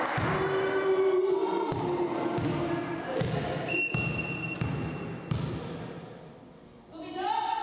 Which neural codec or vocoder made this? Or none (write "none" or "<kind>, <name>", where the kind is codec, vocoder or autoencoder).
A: none